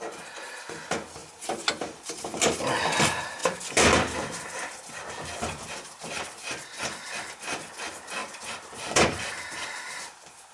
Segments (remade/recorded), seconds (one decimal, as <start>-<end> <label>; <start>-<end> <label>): 0.0-3.4 recorded; 3.4-6.8 remade; 6.8-8.2 recorded; 8.2-10.5 remade